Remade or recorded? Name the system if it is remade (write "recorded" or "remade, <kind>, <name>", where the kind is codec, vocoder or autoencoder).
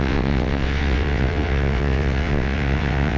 remade, vocoder, WaveNeXt